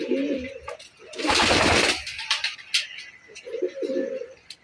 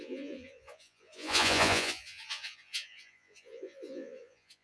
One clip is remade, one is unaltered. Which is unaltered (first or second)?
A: first